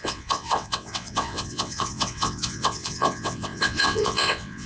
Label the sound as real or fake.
fake